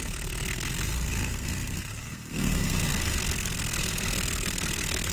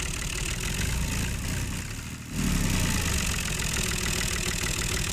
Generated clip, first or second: first